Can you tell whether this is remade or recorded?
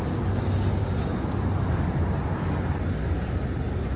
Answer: recorded